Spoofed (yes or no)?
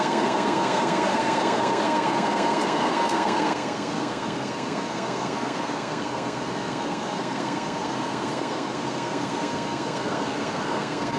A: yes